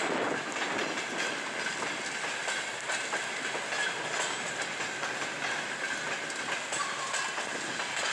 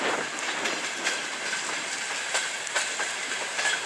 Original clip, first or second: first